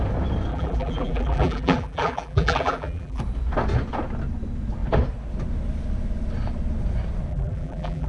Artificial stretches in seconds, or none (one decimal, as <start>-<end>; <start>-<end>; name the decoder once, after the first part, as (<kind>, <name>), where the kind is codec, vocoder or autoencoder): 0.5-3.2 (vocoder, BigVGAN v2); 7.3-8.1